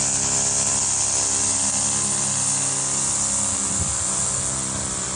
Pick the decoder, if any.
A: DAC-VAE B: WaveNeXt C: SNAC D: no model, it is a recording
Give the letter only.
D